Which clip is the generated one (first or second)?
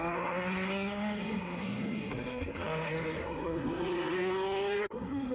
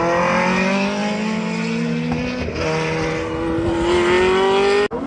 first